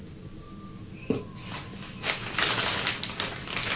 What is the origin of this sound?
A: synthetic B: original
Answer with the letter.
B